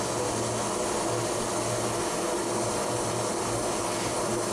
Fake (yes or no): no